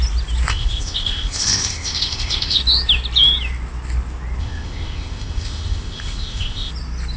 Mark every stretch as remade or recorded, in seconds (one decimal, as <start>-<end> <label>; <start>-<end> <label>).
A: 0.0-0.5 recorded; 0.5-2.6 remade; 2.6-4.4 recorded; 4.4-6.7 remade; 6.7-7.2 recorded